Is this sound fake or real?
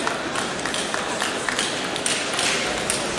real